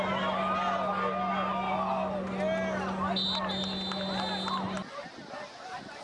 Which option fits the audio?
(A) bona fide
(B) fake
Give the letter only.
A